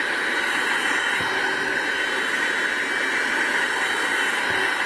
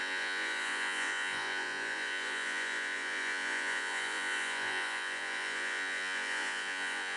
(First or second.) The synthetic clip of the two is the second